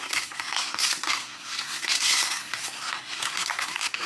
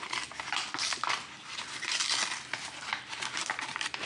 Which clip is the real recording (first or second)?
second